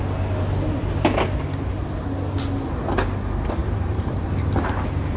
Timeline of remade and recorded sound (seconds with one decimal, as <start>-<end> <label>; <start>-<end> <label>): 0.0-3.6 recorded; 3.6-4.8 remade; 4.8-5.2 recorded